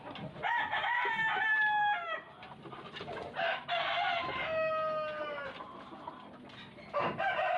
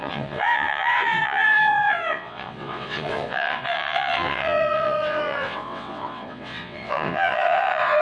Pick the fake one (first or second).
second